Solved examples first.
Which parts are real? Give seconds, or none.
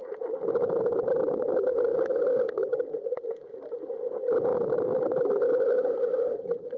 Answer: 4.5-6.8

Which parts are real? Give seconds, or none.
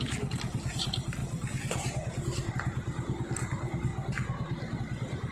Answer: 0.0-5.3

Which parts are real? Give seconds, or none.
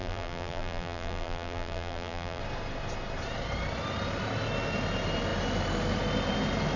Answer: 2.4-6.8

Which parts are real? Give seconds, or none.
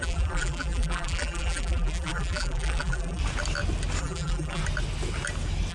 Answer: 3.2-4.0; 4.6-5.7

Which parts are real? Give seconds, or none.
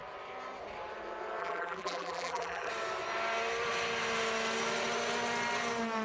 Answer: 0.0-1.4; 2.7-6.0